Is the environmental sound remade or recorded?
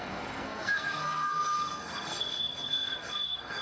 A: remade